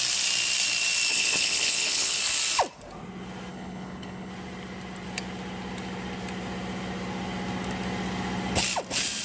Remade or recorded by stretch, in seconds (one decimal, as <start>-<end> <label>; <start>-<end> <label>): 0.0-1.1 recorded; 1.1-2.2 remade; 2.2-3.5 recorded; 3.5-4.3 remade; 4.3-9.2 recorded